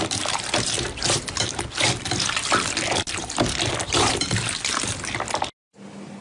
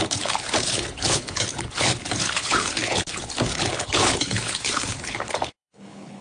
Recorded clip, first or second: first